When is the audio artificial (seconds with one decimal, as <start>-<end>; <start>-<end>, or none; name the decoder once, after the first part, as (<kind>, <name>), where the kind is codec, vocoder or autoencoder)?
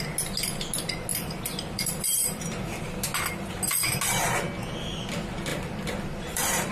1.1-2.4 (vocoder, BigVGAN v2); 5.5-6.7